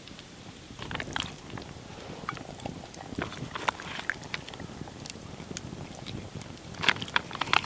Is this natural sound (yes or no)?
no